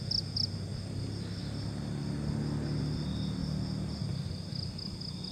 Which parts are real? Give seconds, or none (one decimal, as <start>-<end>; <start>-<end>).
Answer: 0.0-5.3